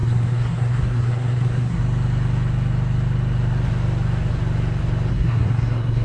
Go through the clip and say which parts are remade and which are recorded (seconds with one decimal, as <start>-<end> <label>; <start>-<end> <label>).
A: 0.0-1.8 remade; 1.8-5.1 recorded; 5.1-6.0 remade